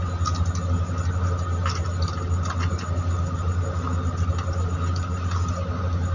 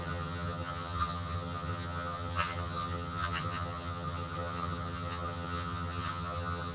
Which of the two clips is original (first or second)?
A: first